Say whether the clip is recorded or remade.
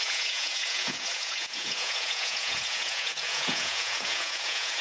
remade